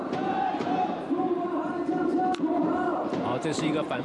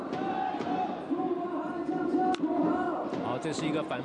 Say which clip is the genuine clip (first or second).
second